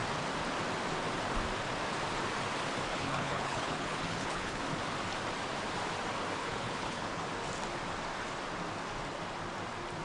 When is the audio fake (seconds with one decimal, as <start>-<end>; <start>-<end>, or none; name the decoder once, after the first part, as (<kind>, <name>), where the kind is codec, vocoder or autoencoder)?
2.9-4.6 (codec, HILCodec); 6.4-7.2